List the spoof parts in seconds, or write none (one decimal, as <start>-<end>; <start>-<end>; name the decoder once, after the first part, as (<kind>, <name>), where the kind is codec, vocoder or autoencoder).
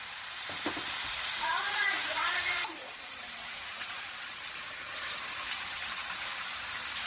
1.0-4.1 (vocoder, Vocos)